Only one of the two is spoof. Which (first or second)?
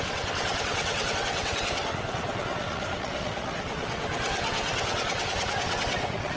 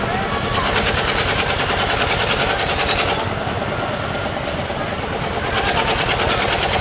first